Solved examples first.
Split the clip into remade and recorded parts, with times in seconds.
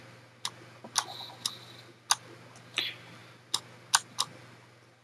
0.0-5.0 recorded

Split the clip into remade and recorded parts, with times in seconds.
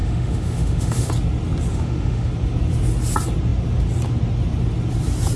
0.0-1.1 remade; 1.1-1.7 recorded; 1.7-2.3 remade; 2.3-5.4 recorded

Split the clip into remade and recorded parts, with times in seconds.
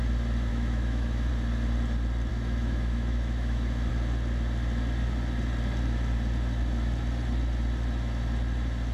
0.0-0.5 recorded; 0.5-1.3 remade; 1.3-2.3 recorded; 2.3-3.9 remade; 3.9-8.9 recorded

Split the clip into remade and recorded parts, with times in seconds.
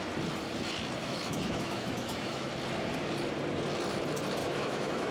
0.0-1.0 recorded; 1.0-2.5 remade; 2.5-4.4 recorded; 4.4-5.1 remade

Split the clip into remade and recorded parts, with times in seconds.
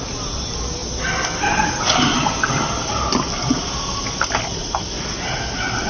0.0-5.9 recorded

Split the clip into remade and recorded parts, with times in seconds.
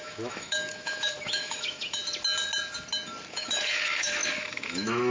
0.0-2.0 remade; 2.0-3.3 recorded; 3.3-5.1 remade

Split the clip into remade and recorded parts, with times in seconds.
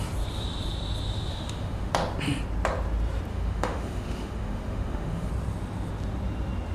0.0-1.3 recorded; 1.3-1.9 remade; 1.9-3.3 recorded; 3.3-5.3 remade; 5.3-6.7 recorded